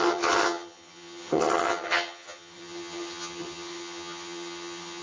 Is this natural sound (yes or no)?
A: no